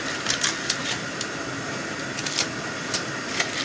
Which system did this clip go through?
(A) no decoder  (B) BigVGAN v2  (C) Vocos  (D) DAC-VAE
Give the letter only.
A